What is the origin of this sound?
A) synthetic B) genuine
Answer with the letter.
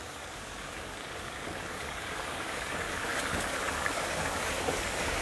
A